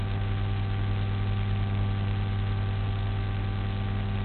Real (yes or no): yes